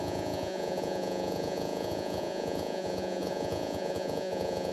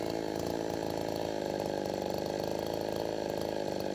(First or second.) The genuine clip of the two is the second